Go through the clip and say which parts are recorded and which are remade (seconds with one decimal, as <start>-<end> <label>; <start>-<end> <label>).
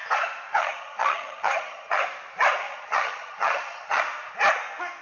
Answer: 0.0-0.6 recorded; 0.6-2.0 remade; 2.0-2.6 recorded; 2.6-4.0 remade; 4.0-5.0 recorded